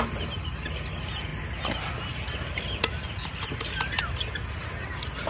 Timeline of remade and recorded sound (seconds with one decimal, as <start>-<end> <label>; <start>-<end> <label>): 0.0-5.3 recorded